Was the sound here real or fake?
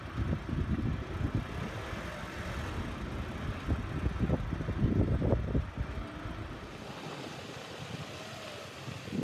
real